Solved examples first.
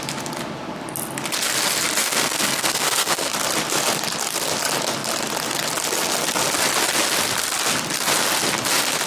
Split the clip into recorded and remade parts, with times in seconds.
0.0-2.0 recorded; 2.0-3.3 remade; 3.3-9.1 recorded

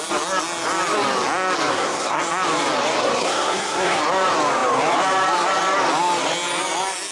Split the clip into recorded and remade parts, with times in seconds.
0.0-1.7 recorded; 1.7-2.2 remade; 2.2-3.0 recorded; 3.0-4.0 remade; 4.0-7.1 recorded

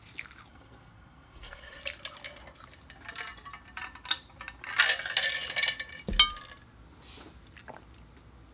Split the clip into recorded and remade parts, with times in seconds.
0.0-0.5 recorded; 0.5-1.8 remade; 1.8-8.5 recorded

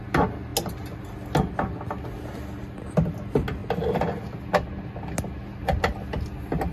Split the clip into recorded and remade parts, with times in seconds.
0.0-6.7 recorded

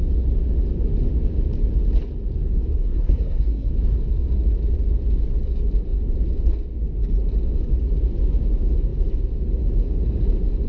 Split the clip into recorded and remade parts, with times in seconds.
0.0-2.7 recorded; 2.7-3.7 remade; 3.7-10.7 recorded